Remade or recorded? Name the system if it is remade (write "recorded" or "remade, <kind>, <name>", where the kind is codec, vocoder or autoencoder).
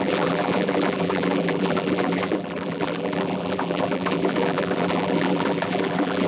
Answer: remade, vocoder, BigVGAN v2